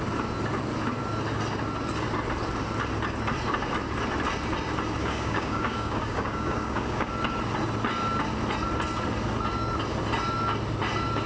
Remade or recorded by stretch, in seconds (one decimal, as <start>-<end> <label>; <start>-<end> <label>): 0.0-5.0 recorded; 5.0-7.1 remade; 7.1-11.3 recorded